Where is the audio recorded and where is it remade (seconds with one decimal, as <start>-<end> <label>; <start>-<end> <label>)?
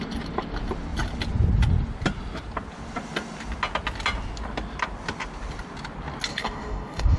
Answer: 0.0-6.3 recorded; 6.3-7.2 remade